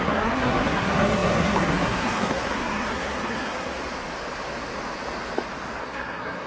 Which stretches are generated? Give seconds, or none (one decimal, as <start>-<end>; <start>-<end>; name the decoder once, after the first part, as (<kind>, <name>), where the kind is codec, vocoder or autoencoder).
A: 0.0-3.7 (codec, SNAC); 5.8-6.5